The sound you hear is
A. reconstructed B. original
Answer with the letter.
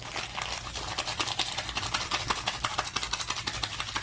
B